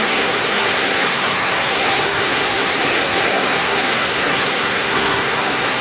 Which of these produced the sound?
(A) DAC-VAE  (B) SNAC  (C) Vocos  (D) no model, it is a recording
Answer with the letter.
B